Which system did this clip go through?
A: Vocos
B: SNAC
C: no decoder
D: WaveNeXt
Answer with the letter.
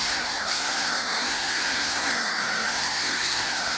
B